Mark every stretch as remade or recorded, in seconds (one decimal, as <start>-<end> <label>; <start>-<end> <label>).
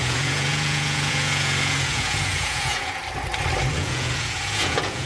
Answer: 0.0-3.0 remade; 3.0-3.7 recorded; 3.7-5.1 remade